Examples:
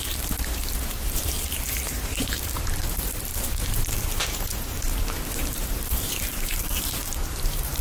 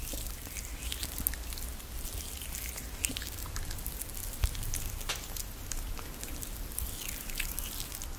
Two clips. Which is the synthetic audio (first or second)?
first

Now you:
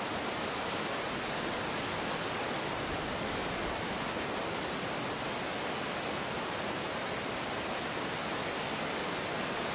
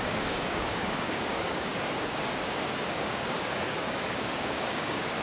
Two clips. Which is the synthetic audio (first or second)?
second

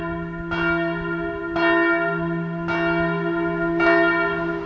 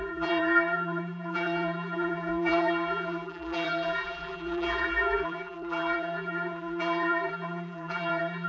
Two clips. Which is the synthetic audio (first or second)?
second